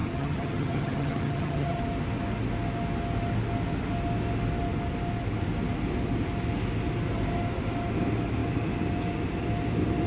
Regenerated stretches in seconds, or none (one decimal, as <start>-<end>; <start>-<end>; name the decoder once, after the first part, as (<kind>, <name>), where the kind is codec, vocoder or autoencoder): 0.0-1.8 (vocoder, HiFi-GAN)